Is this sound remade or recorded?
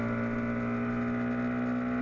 recorded